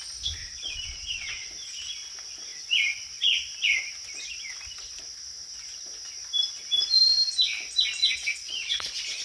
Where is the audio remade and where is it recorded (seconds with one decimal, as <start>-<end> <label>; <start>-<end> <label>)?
0.0-0.4 recorded; 0.4-1.5 remade; 1.5-8.0 recorded; 8.0-9.2 remade